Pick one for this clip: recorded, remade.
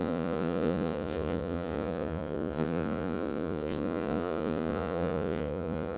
remade